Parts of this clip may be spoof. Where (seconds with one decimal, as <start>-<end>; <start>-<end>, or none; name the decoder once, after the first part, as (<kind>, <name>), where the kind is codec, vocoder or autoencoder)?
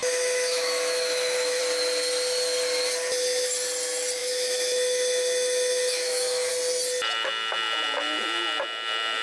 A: 0.0-1.6 (autoencoder, DAC-VAE); 4.2-6.5